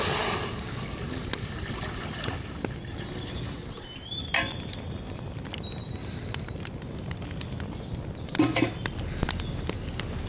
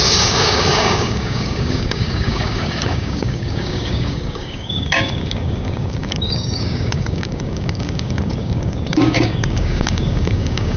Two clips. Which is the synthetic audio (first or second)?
second